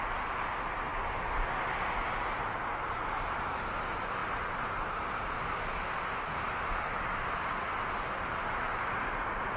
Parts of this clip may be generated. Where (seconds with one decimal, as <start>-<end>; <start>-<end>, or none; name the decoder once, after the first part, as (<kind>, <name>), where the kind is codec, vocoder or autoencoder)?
none